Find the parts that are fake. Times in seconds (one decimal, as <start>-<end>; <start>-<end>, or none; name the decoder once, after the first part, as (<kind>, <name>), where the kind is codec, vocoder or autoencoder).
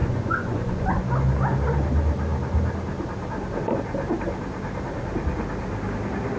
0.0-1.0 (vocoder, Vocos)